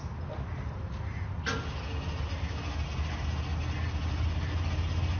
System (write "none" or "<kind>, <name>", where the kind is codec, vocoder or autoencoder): none